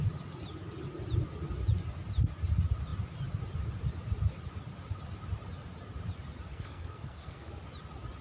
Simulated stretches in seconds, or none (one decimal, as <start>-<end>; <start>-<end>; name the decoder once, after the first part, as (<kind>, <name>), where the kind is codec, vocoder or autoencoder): 6.5-7.6 (codec, SNAC)